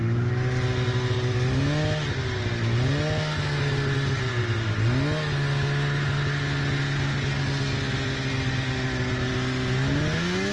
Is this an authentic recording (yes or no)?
yes